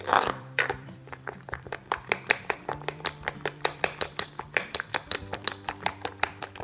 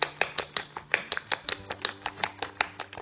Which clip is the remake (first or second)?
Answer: first